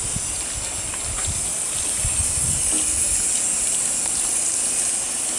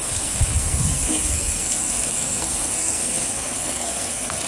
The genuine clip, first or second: first